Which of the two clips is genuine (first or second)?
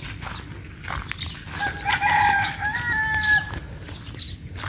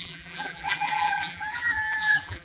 first